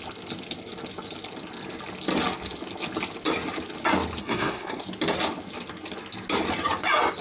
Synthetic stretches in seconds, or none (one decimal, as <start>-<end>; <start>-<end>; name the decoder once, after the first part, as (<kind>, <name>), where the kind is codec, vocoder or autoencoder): 4.2-4.8 (codec, SNAC)

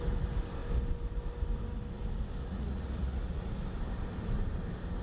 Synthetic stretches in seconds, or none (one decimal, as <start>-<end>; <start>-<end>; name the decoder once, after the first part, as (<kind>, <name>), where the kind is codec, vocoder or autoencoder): 2.4-3.5 (vocoder, Vocos)